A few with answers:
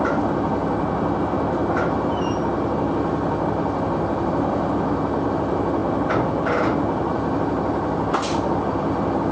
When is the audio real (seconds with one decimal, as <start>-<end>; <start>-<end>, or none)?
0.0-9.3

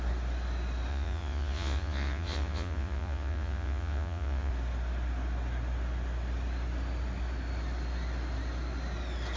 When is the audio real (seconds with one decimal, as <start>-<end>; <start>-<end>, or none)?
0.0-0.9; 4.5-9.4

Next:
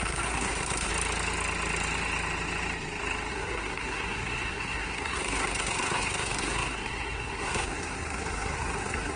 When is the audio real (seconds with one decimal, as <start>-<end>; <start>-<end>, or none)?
0.9-3.3

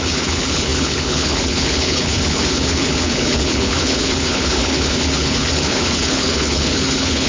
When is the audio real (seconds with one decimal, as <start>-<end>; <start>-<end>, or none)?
none

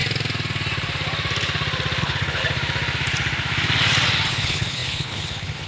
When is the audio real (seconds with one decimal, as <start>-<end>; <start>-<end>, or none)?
0.0-2.0; 2.4-4.3

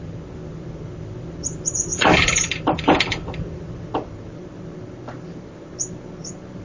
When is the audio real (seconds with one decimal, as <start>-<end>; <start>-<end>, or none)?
0.0-1.9; 3.6-6.6